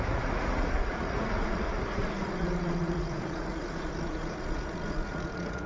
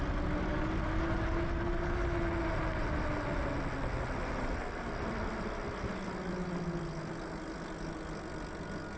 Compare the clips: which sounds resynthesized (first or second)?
first